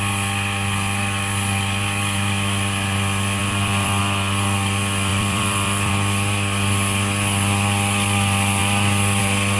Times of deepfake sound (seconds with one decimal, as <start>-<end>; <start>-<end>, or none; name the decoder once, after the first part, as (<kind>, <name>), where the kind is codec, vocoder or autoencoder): 3.4-4.0 (vocoder, BigVGAN v2); 5.1-5.9